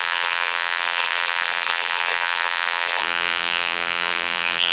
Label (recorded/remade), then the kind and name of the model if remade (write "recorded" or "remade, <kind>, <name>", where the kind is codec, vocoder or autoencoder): remade, vocoder, BigVGAN v2